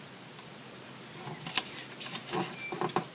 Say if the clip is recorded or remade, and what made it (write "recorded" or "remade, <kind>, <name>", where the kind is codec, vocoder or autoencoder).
recorded